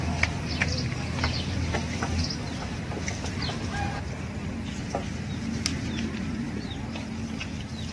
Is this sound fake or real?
fake